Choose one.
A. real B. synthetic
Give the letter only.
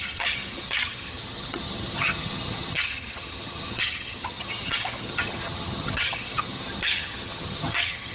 B